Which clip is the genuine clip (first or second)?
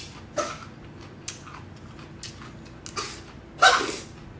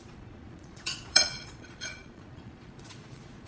first